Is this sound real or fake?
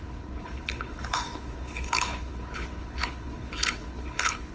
fake